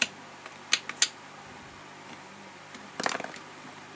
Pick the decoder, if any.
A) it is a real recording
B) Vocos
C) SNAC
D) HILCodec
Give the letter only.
A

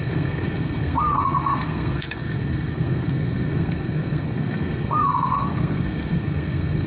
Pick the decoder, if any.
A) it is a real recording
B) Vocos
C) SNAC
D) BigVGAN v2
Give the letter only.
C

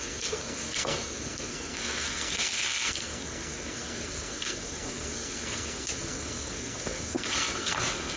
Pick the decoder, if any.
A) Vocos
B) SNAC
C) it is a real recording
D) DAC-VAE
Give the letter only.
B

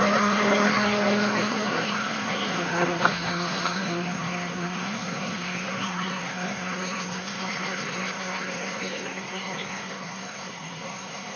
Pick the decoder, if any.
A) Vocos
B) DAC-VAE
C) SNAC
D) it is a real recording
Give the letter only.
C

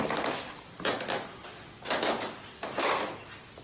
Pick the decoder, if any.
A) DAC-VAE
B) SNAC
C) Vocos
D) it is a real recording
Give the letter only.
D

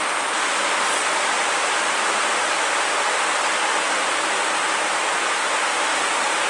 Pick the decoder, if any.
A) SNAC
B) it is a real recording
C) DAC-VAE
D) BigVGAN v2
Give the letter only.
B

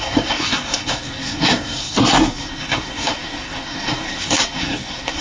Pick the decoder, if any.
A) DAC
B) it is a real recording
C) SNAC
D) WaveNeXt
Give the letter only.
C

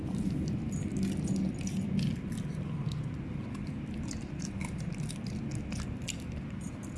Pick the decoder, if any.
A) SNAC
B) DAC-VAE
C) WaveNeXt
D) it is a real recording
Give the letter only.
D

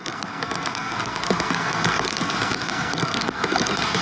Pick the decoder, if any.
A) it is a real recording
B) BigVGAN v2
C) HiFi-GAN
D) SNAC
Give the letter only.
D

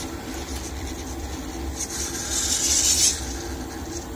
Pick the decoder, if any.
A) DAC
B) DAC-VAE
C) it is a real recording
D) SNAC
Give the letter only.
C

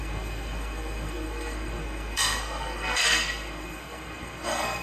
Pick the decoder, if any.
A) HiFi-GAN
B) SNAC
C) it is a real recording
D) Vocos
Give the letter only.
B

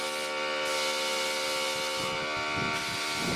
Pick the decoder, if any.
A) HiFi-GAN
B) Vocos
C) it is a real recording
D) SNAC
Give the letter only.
C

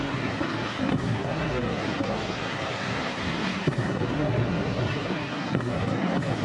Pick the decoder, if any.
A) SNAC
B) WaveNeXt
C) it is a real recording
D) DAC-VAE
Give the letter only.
A